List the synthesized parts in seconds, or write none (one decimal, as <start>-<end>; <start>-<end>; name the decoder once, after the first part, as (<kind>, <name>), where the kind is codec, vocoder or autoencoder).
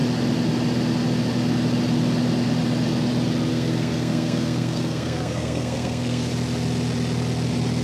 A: 3.5-6.3 (codec, SNAC)